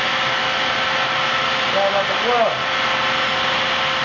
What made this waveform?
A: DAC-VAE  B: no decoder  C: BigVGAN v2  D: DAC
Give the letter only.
B